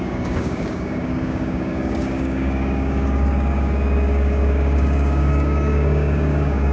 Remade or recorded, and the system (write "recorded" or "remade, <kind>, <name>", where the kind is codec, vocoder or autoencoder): remade, codec, DAC